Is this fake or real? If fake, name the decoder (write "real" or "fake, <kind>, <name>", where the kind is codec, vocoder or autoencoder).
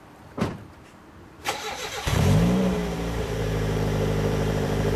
fake, vocoder, BigVGAN v2